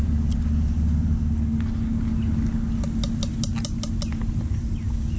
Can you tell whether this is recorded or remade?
recorded